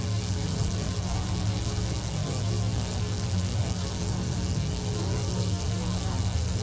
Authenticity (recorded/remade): remade